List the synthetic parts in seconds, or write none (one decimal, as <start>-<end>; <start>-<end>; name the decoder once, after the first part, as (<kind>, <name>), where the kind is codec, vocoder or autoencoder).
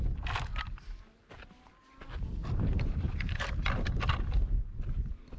0.5-1.2 (vocoder, BigVGAN v2); 2.4-4.1